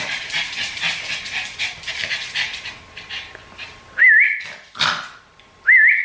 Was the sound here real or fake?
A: real